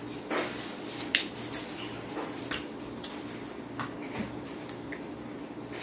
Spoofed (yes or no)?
no